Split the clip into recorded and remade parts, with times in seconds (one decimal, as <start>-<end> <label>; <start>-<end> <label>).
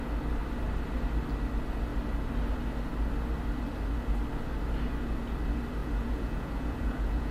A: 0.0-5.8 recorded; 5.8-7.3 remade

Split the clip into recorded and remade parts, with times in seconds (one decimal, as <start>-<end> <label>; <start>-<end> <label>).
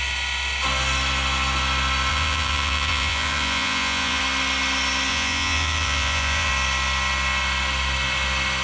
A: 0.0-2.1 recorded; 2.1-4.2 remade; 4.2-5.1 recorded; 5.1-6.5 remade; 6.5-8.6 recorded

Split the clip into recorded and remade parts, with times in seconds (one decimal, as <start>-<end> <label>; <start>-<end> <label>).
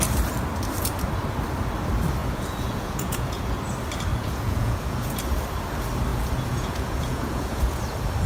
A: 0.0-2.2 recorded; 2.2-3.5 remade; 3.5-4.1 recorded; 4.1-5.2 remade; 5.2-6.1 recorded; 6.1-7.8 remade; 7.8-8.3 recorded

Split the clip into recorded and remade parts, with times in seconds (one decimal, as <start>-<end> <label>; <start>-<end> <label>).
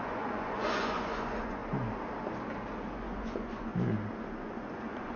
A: 0.0-1.6 remade; 1.6-2.9 recorded; 2.9-3.7 remade; 3.7-4.4 recorded; 4.4-5.2 remade